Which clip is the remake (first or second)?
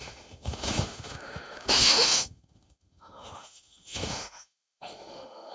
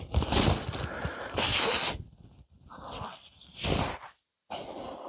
first